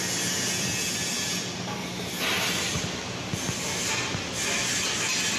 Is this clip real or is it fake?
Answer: real